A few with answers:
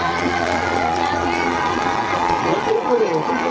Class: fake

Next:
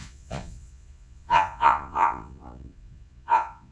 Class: fake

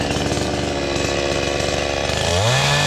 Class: real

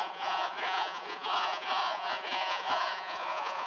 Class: fake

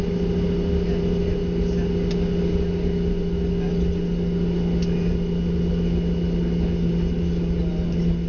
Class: real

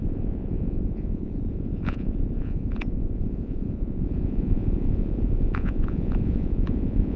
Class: fake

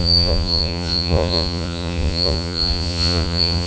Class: fake